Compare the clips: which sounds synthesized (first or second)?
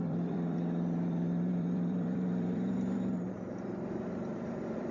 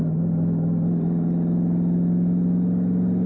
first